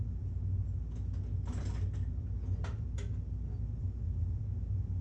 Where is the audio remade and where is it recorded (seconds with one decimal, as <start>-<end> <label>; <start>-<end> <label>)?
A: 0.0-3.8 recorded; 3.8-4.4 remade; 4.4-5.0 recorded